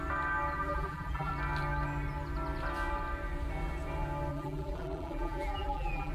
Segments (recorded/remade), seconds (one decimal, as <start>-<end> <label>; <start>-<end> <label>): 0.0-0.6 recorded; 0.6-1.3 remade; 1.3-4.3 recorded; 4.3-6.1 remade